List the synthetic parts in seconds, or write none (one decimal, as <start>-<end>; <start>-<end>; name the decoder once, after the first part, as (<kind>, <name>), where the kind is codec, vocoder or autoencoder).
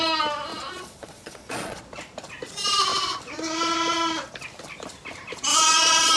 0.5-1.8 (vocoder, Vocos); 5.5-6.2